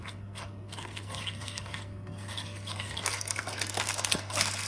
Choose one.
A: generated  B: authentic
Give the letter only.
A